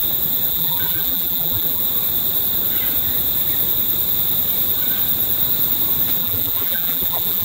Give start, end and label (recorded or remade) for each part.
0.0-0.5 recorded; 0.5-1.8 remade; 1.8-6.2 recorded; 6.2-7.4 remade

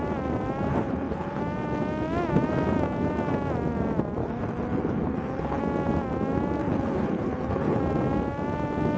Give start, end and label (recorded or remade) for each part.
0.0-0.7 recorded; 0.7-1.4 remade; 1.4-4.2 recorded; 4.2-5.6 remade; 5.6-6.6 recorded; 6.6-7.8 remade; 7.8-9.0 recorded